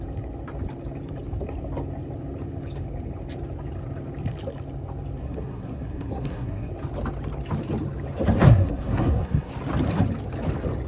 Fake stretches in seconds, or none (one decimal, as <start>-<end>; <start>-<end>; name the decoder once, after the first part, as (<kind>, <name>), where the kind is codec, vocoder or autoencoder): 5.2-6.7 (codec, SNAC); 8.4-9.5

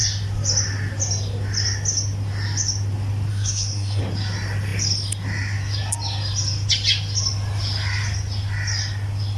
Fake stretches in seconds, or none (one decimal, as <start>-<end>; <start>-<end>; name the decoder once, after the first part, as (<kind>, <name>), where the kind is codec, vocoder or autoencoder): 3.3-4.0 (codec, SNAC)

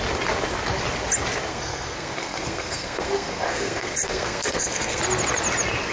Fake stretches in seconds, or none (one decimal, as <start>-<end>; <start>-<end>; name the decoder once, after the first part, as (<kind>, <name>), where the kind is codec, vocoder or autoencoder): 1.5-5.0 (codec, SNAC)

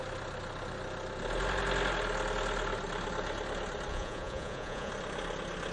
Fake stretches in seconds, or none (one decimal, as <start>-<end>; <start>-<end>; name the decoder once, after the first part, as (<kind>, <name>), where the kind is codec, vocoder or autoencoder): 3.9-4.9 (vocoder, Vocos)